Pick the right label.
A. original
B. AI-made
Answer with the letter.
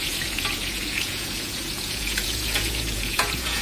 B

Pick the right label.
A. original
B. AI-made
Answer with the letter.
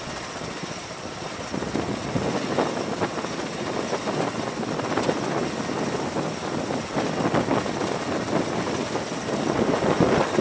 A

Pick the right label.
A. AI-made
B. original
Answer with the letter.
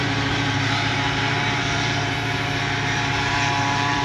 A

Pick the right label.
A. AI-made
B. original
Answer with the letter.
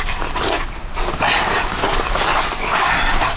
B